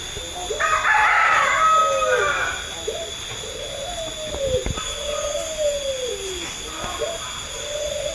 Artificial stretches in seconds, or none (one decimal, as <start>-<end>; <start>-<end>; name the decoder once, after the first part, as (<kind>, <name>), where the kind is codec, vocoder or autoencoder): none